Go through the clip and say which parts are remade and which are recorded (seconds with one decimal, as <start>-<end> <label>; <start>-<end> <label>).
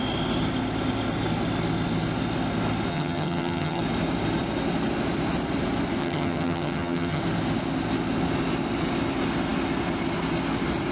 0.0-2.9 recorded; 2.9-3.8 remade; 3.8-6.0 recorded; 6.0-7.2 remade; 7.2-10.9 recorded